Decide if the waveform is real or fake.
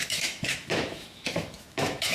fake